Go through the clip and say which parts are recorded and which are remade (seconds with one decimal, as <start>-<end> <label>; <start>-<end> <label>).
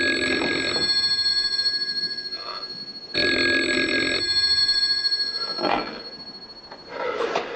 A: 0.0-1.3 recorded; 1.3-2.8 remade; 2.8-4.6 recorded; 4.6-6.0 remade; 6.0-7.6 recorded